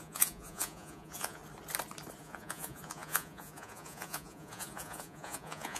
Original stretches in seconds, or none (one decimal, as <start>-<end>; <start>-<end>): 1.4-2.2